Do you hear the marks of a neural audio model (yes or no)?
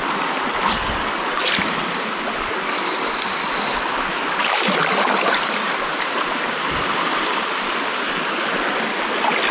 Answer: no